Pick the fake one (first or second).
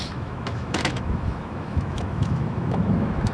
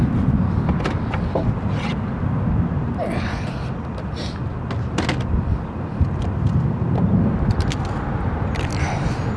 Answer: first